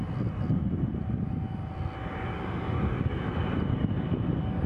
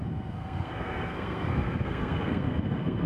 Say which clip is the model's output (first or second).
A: second